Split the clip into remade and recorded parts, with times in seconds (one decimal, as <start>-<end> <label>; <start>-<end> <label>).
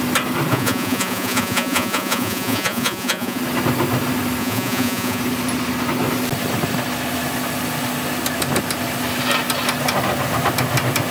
0.0-0.5 recorded; 0.5-3.4 remade; 3.4-4.4 recorded; 4.4-5.2 remade; 5.2-11.1 recorded